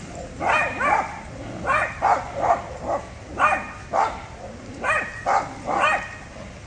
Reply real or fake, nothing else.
real